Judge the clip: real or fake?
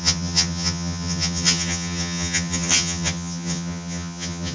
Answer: fake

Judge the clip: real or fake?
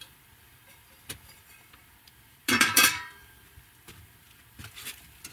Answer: fake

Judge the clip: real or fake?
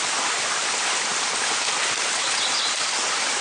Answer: real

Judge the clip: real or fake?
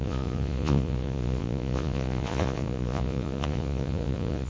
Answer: fake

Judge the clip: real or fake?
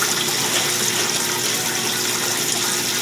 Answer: real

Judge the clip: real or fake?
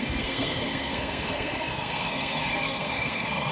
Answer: fake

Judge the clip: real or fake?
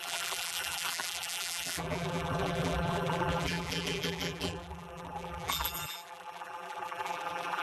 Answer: fake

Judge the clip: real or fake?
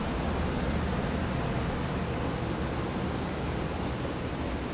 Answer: real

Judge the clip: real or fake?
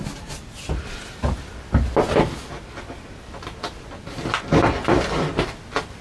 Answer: real